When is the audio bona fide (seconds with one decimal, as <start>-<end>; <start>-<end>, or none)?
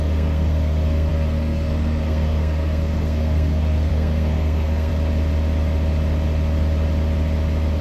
4.9-7.8